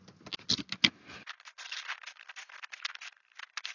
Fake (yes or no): no